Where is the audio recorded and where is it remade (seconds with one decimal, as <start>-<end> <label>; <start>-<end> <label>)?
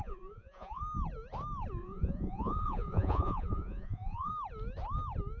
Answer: 0.0-0.8 remade; 0.8-1.8 recorded; 1.8-4.3 remade; 4.3-5.4 recorded